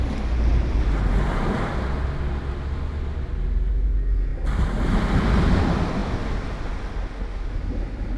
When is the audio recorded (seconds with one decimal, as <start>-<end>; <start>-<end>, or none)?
0.0-0.5; 1.7-4.3; 5.0-8.2

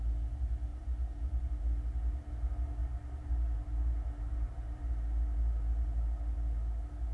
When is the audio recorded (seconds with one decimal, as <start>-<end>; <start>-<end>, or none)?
0.0-0.7; 1.6-2.8; 4.9-7.1

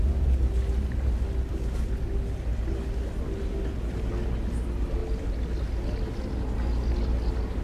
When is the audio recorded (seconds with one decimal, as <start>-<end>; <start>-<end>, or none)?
0.0-7.6

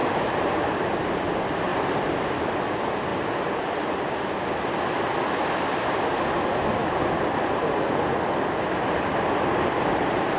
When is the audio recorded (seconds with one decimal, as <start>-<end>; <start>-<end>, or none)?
0.0-1.7; 2.5-3.1; 3.8-6.8; 7.3-10.4

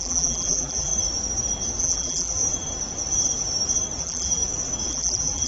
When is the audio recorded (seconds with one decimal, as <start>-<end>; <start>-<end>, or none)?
0.9-1.8; 2.4-4.0; 4.4-4.9